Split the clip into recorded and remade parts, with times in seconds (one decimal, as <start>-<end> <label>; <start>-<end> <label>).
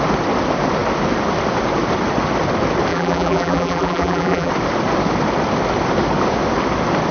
0.0-2.9 recorded; 2.9-4.5 remade; 4.5-7.1 recorded